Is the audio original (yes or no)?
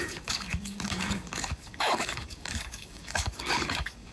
no